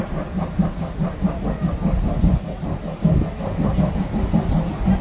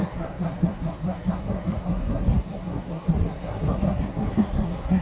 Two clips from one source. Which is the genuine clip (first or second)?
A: first